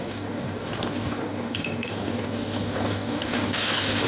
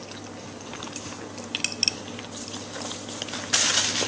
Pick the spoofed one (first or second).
first